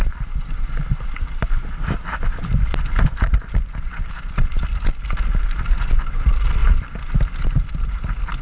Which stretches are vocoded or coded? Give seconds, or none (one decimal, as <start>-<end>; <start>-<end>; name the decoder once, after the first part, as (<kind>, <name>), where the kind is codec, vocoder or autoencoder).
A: none